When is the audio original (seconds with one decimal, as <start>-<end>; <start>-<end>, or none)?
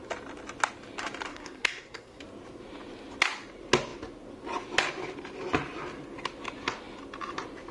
0.0-1.3; 2.2-7.7